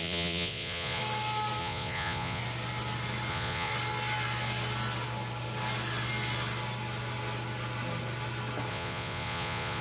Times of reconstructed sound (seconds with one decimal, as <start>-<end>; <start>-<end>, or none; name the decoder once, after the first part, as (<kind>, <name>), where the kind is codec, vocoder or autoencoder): 0.0-1.0 (vocoder, Vocos); 1.6-2.4; 3.3-3.7; 8.7-9.8